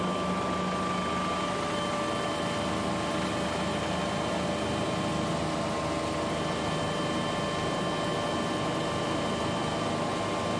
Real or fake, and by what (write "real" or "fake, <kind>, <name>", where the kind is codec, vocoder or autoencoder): real